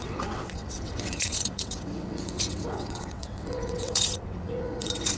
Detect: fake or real fake